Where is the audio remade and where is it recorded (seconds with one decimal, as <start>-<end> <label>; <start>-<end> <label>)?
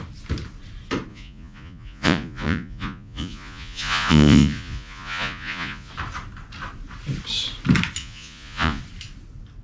0.0-1.1 recorded; 1.1-5.9 remade; 5.9-8.0 recorded; 8.0-8.8 remade; 8.8-9.6 recorded